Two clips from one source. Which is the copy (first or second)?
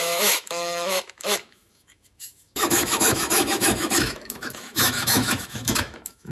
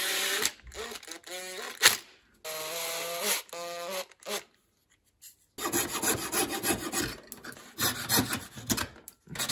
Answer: first